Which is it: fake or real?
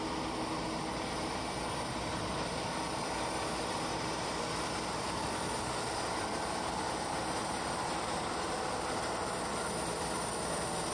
real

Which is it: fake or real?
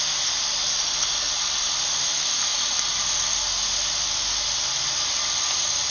real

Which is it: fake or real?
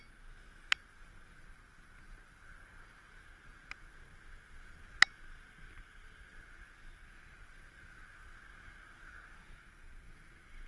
real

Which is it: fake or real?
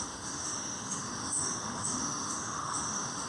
fake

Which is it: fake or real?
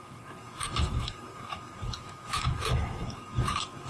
fake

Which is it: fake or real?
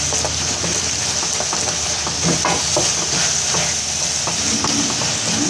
real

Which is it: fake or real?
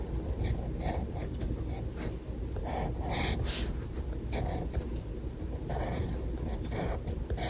real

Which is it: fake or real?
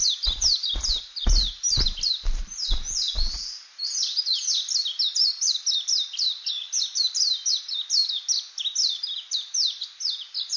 real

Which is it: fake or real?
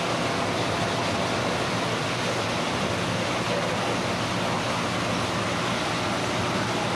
real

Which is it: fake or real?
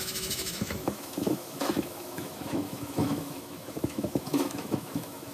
fake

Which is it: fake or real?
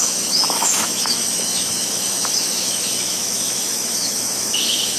fake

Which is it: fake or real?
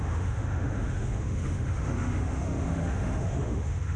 fake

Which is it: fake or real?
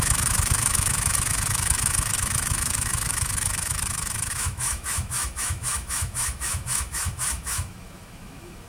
fake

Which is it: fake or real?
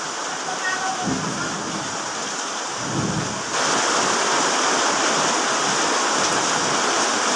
real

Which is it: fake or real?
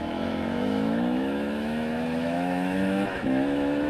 fake